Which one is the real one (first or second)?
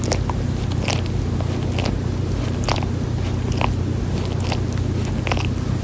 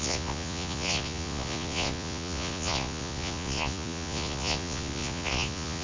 first